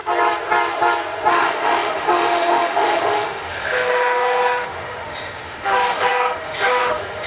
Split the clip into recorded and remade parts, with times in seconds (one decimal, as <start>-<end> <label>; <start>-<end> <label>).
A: 0.0-1.3 recorded; 1.3-7.3 remade